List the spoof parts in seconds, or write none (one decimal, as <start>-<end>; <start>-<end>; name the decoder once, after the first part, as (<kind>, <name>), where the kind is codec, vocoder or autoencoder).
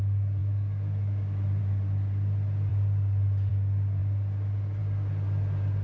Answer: 0.4-1.6 (autoencoder, DAC-VAE)